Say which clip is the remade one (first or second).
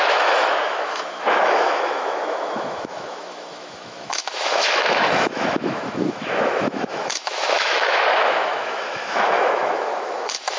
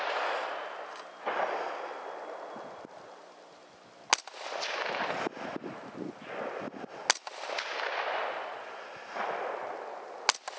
first